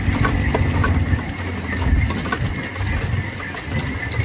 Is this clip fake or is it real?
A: real